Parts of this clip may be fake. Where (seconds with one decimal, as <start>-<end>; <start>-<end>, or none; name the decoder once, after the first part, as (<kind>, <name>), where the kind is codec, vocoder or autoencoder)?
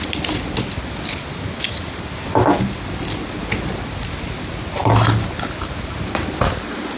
none